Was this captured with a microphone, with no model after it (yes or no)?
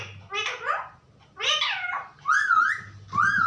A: yes